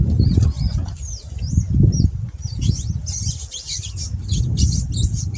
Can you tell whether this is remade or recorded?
recorded